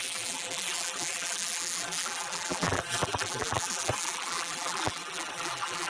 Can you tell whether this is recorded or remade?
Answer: remade